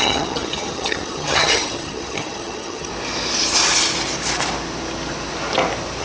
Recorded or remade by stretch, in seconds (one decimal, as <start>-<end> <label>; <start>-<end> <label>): 0.0-2.9 remade; 2.9-6.0 recorded